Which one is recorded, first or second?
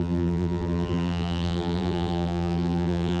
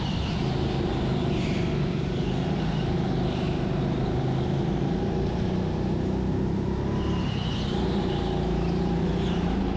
second